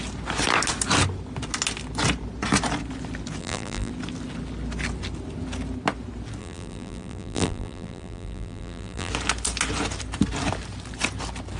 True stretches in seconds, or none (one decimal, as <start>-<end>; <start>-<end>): 0.0-3.4; 3.9-6.4; 9.1-11.6